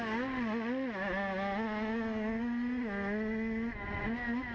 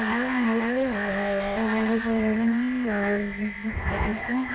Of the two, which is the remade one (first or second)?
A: second